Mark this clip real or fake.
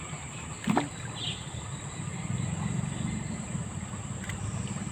real